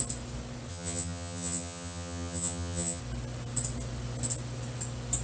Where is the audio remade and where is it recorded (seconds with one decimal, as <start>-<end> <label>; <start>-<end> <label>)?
0.0-0.7 recorded; 0.7-3.0 remade; 3.0-5.2 recorded